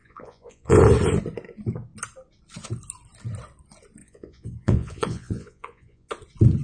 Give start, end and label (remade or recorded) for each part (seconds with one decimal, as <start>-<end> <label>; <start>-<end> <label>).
0.0-0.8 remade; 0.8-4.0 recorded; 4.0-6.1 remade; 6.1-6.6 recorded